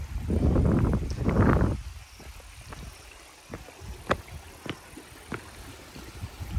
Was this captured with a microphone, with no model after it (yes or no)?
yes